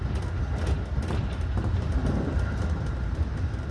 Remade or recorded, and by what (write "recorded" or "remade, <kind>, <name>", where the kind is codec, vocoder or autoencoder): recorded